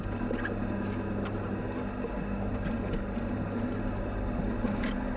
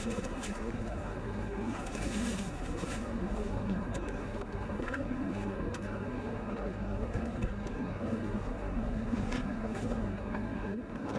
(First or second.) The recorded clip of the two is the first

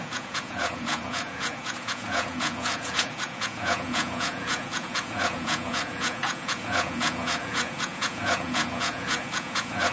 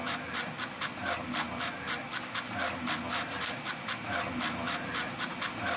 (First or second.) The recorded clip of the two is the second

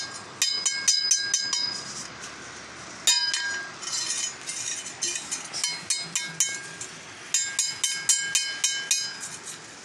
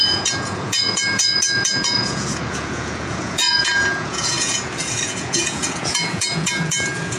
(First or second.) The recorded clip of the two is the first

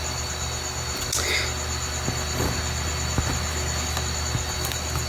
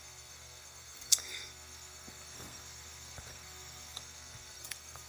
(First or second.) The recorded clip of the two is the first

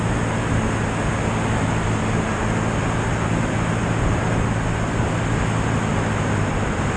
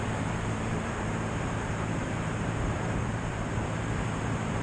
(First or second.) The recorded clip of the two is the first